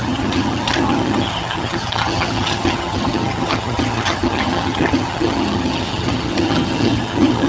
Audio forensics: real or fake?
fake